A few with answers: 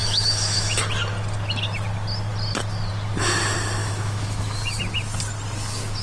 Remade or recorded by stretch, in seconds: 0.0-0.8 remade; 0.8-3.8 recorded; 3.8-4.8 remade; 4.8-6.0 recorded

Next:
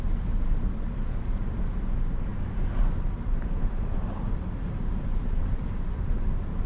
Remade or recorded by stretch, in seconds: 0.0-6.7 recorded